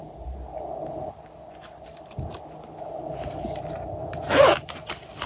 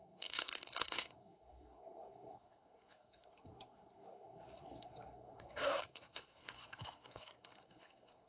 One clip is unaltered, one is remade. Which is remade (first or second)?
second